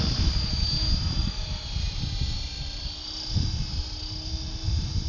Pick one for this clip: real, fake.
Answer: real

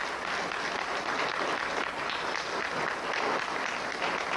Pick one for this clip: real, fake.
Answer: real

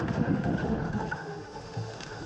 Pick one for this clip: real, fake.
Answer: fake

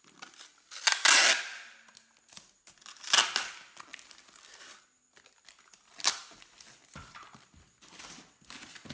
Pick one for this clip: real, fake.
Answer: real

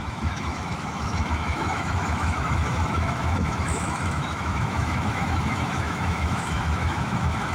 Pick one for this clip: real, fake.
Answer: fake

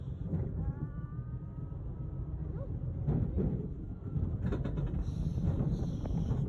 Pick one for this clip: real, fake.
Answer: real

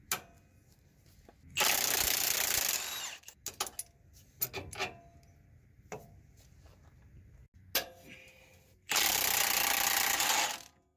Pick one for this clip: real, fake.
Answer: real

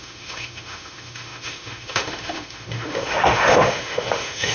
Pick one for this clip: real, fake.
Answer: fake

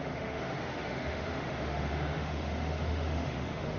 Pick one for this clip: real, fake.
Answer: fake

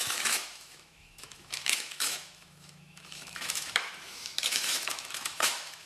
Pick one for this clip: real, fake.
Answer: fake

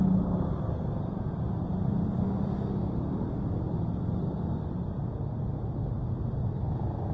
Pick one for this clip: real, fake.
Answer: real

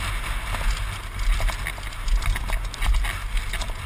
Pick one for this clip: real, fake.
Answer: real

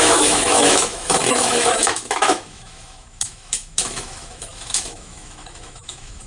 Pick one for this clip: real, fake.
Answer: fake